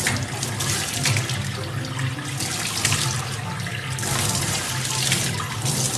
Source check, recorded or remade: recorded